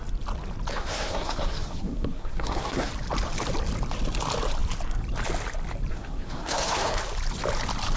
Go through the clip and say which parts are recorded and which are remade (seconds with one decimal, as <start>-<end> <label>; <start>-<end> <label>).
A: 0.0-0.7 recorded; 0.7-2.9 remade; 2.9-5.9 recorded; 5.9-7.0 remade; 7.0-8.0 recorded